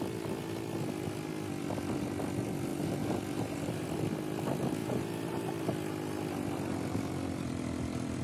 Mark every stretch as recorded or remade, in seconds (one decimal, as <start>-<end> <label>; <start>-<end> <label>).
0.0-2.7 recorded; 2.7-3.9 remade; 3.9-4.8 recorded; 4.8-5.5 remade; 5.5-8.2 recorded

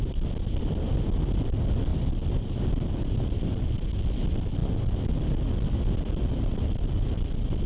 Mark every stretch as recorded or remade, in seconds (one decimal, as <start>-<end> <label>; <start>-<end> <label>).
0.0-1.9 recorded; 1.9-3.4 remade; 3.4-7.7 recorded

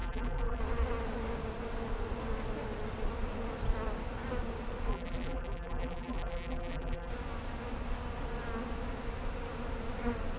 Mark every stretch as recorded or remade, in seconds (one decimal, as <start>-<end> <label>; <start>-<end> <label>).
0.0-0.6 remade; 0.6-4.9 recorded; 4.9-7.1 remade; 7.1-10.4 recorded

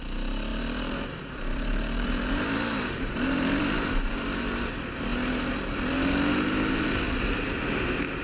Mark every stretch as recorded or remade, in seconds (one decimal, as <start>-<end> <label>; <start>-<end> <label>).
0.0-0.5 recorded; 0.5-4.1 remade; 4.1-8.2 recorded